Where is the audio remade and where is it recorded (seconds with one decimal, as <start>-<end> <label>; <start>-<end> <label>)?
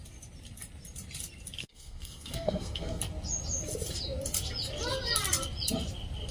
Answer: 0.0-1.6 recorded; 1.6-3.0 remade; 3.0-6.3 recorded